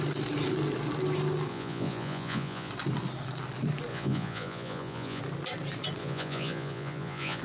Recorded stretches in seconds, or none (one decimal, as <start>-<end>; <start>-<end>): 0.0-1.5; 2.7-3.9; 5.2-6.0